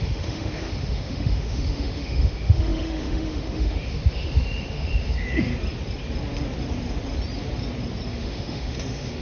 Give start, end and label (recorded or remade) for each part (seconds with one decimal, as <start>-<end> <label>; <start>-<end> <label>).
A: 0.0-5.5 remade; 5.5-8.1 recorded; 8.1-9.2 remade